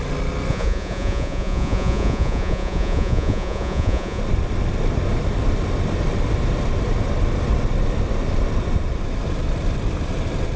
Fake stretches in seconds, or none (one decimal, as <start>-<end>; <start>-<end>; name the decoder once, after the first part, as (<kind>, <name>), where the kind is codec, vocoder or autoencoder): 0.5-4.2 (vocoder, Vocos)